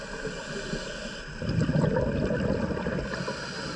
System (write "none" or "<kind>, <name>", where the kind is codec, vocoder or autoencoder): none